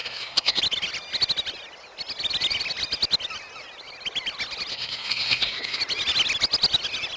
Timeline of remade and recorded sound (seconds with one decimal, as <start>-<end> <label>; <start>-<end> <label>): 0.0-0.6 remade; 0.6-4.7 recorded; 4.7-5.8 remade; 5.8-7.2 recorded